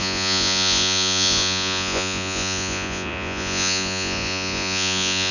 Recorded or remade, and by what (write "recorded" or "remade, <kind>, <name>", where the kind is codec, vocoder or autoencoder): remade, vocoder, Vocos